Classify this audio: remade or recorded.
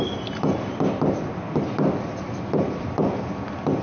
recorded